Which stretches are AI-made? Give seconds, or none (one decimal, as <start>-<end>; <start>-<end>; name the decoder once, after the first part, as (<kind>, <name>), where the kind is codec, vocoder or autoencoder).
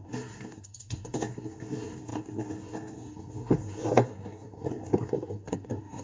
0.0-6.0 (codec, SNAC)